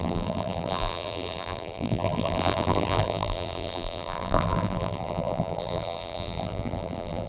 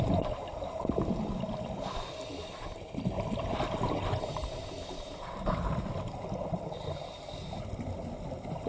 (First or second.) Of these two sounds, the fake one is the first